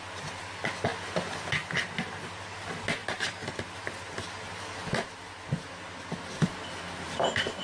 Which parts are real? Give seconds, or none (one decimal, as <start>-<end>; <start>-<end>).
0.0-7.6